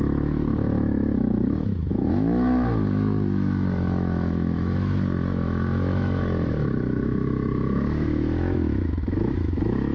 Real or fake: fake